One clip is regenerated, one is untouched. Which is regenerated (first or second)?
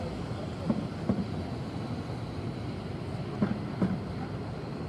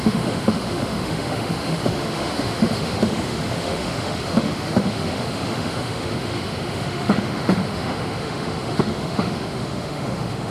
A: second